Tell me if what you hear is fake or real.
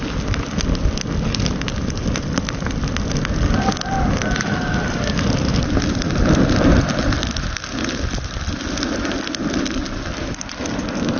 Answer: real